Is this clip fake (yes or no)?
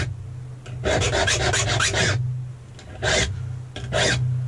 no